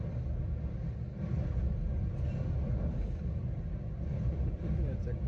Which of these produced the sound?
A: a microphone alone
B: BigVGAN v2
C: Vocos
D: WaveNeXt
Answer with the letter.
A